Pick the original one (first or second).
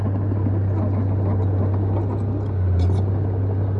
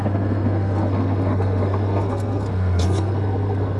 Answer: first